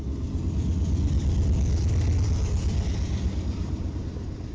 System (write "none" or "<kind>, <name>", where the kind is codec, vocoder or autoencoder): none